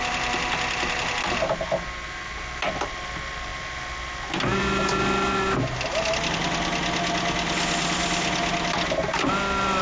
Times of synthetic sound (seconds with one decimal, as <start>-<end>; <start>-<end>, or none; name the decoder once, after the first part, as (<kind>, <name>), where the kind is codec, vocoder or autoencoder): none